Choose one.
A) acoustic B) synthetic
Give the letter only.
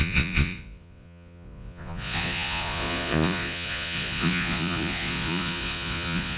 B